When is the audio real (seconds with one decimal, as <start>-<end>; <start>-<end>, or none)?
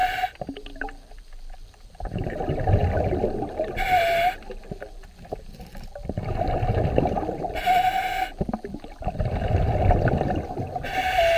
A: 0.6-11.4